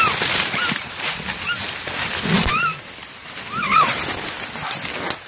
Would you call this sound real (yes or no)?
yes